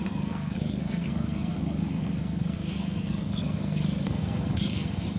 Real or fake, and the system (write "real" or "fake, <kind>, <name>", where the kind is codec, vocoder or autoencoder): fake, codec, SNAC